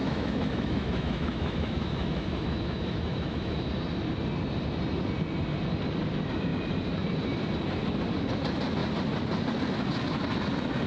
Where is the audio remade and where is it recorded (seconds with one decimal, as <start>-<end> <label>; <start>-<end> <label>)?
0.0-3.7 remade; 3.7-10.9 recorded